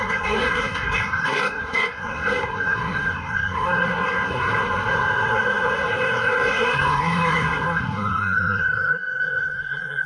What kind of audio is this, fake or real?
fake